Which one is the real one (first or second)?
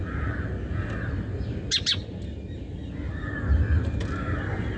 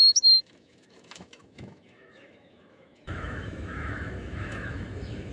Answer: first